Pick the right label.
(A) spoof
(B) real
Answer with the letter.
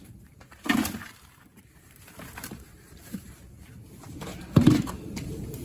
A